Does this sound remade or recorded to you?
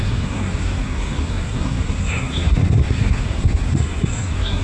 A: remade